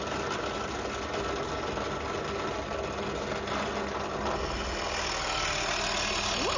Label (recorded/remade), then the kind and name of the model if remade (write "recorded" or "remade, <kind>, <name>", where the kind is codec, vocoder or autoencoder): recorded